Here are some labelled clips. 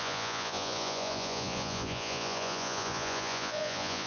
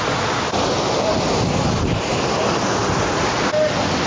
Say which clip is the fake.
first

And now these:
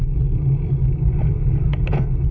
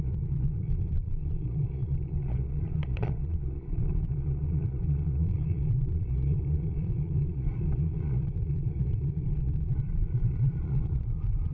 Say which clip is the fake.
second